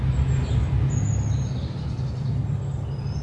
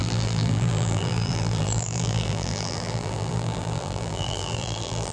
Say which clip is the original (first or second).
first